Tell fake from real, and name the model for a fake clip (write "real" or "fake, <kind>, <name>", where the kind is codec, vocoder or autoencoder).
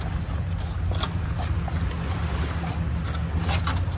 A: real